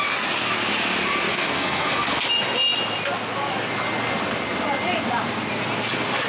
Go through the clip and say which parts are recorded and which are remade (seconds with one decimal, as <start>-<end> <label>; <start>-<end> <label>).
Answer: 0.0-1.3 recorded; 1.3-2.2 remade; 2.2-6.3 recorded